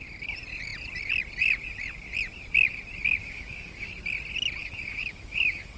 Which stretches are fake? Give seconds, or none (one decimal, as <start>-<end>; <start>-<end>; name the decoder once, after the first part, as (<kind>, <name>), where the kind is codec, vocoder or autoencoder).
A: 3.2-3.9 (autoencoder, DAC-VAE); 4.6-5.8